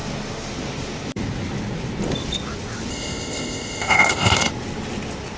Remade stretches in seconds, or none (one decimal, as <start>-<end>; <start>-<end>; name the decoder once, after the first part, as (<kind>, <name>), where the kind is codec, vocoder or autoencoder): 2.9-4.5 (codec, ZipCodec)